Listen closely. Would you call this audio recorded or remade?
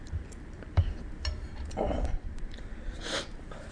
remade